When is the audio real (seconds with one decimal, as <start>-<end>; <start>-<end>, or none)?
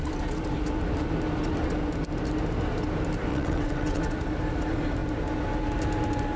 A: 0.0-3.3; 4.0-6.4